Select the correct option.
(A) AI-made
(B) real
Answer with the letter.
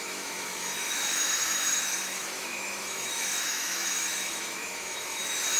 A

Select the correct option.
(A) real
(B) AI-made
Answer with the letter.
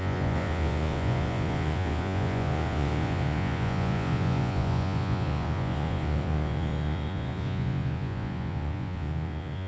B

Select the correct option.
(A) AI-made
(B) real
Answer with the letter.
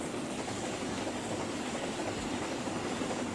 A